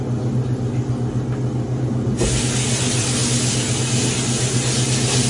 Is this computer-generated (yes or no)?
no